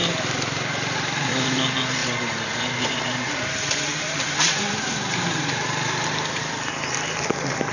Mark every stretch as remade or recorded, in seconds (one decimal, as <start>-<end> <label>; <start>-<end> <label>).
0.0-1.3 remade; 1.3-2.0 recorded; 2.0-6.3 remade; 6.3-7.7 recorded